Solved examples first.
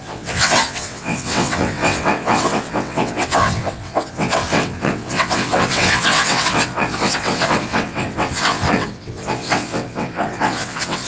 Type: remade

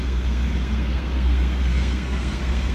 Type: remade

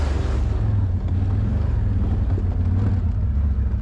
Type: recorded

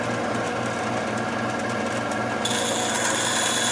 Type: recorded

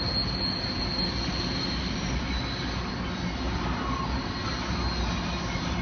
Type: recorded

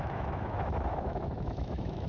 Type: remade